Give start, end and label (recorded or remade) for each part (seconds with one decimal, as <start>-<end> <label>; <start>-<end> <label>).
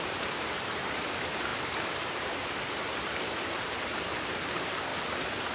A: 0.0-4.9 remade; 4.9-5.5 recorded